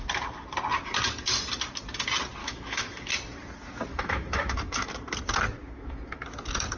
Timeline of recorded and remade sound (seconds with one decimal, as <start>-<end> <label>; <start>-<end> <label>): 0.0-2.4 recorded; 2.4-3.1 remade; 3.1-3.9 recorded; 3.9-4.9 remade; 4.9-5.6 recorded; 5.6-6.2 remade; 6.2-6.8 recorded